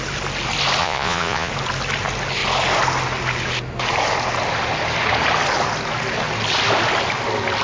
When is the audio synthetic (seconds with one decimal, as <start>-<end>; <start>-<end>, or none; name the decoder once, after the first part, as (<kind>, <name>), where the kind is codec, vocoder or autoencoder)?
0.8-1.5 (vocoder, Vocos)